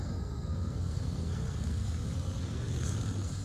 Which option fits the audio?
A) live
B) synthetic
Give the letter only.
B